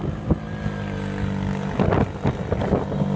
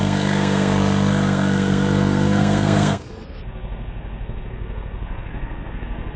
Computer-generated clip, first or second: second